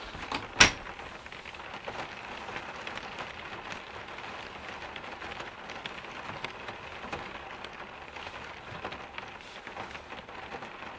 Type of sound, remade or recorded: recorded